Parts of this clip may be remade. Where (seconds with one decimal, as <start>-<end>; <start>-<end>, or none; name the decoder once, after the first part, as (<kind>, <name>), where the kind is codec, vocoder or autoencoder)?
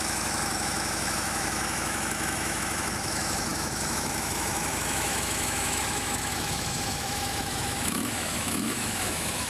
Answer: 0.0-9.5 (autoencoder, DAC-VAE)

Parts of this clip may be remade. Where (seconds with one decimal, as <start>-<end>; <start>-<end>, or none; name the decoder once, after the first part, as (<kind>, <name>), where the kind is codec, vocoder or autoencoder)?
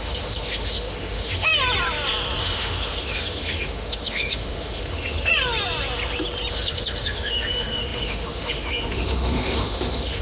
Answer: 0.0-1.5 (autoencoder, DAC-VAE); 2.4-5.3; 6.5-10.2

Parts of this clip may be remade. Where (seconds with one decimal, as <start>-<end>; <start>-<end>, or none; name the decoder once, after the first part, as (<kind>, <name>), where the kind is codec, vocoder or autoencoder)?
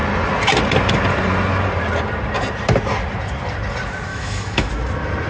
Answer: 4.1-4.7 (autoencoder, DAC-VAE)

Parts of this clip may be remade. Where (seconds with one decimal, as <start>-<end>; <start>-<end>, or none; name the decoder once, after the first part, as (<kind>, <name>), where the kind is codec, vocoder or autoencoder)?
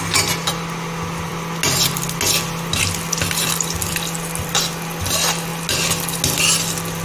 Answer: none